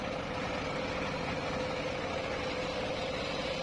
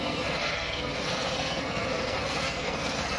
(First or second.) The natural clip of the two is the first